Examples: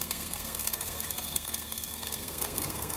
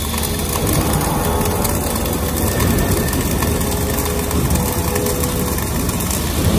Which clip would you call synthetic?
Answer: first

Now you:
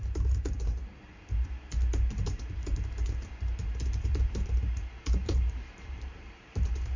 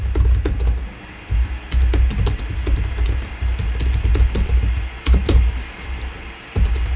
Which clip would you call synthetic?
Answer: first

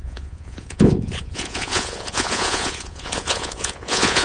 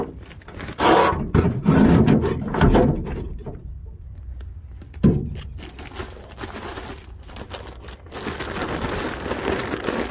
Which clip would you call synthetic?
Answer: first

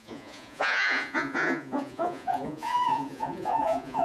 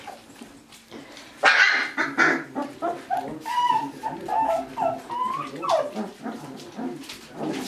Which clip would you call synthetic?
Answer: first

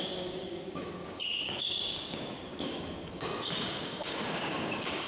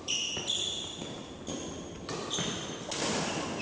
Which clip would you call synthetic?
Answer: first